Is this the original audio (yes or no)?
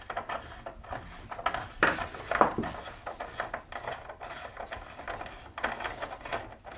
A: yes